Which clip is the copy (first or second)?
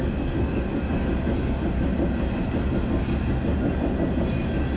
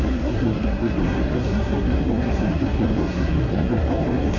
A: second